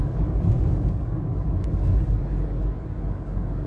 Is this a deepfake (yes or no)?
yes